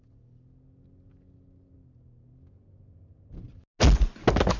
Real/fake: real